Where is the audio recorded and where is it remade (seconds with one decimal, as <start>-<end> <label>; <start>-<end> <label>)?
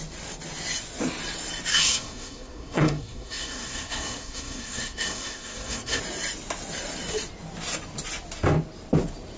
0.0-1.7 recorded; 1.7-6.0 remade; 6.0-9.4 recorded